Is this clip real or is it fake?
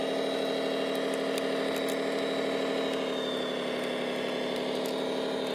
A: real